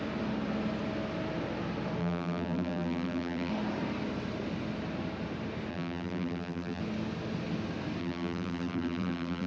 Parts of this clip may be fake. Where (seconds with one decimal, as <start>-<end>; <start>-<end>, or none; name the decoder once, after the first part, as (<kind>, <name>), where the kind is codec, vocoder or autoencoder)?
2.0-3.5 (vocoder, BigVGAN v2); 5.7-6.8; 8.0-9.5